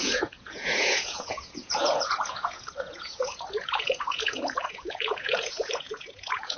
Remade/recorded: remade